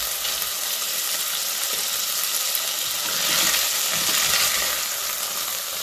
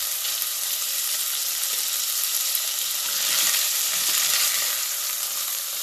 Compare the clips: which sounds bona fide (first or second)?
first